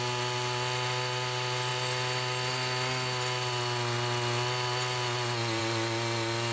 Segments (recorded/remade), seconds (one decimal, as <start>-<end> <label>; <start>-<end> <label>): 0.0-6.5 recorded